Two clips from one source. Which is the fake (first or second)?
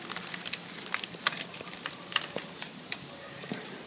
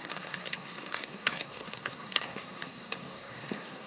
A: second